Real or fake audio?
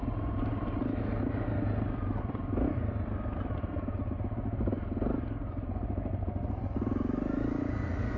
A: real